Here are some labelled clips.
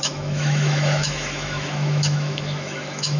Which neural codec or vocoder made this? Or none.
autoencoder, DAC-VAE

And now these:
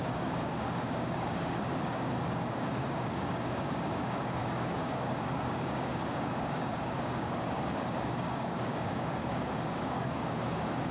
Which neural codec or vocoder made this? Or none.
codec, DAC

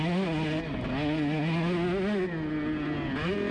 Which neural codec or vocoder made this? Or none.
none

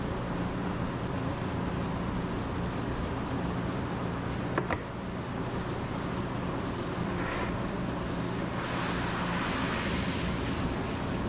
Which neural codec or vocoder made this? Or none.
none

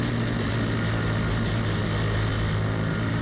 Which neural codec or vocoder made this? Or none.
none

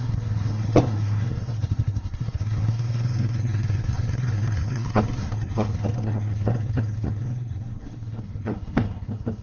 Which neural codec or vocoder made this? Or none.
codec, SNAC